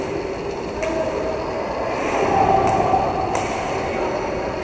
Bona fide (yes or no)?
yes